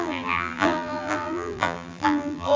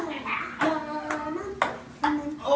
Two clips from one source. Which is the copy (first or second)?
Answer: first